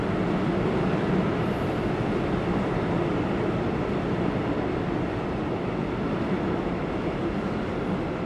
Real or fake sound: real